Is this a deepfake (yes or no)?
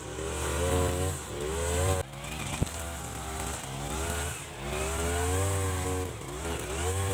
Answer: no